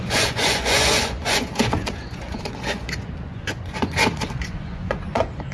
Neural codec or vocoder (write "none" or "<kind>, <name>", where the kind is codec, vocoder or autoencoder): vocoder, Vocos